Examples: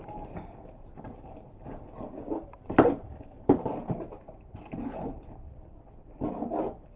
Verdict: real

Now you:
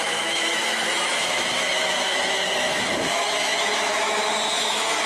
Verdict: fake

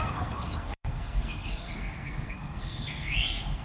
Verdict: fake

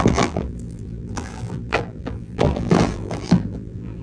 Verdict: fake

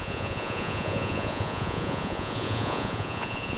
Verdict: fake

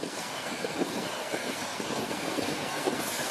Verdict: fake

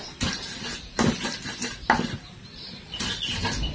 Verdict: real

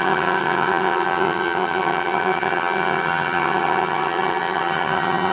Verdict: fake